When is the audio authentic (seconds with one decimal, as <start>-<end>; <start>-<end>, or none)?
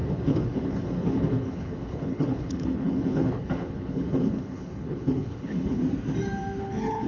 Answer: 5.8-6.6